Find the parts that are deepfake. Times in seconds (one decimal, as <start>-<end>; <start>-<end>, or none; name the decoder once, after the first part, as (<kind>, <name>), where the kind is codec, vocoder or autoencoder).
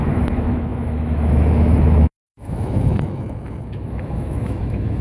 0.0-5.0 (autoencoder, DAC-VAE)